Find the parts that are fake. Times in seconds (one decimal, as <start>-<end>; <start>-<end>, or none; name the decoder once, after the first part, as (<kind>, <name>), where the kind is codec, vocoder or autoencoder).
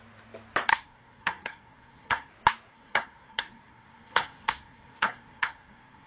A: 0.7-2.3 (codec, SNAC); 2.7-6.1